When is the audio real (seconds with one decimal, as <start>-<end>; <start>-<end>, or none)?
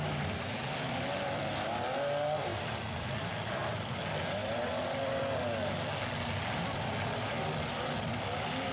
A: 0.0-2.5; 3.5-4.4; 5.2-6.4; 8.1-8.7